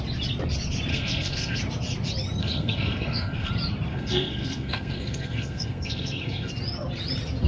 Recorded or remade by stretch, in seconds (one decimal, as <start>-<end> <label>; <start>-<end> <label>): 0.0-0.9 recorded; 0.9-1.6 remade; 1.6-2.4 recorded; 2.4-3.5 remade; 3.5-3.9 recorded; 3.9-6.5 remade; 6.5-7.5 recorded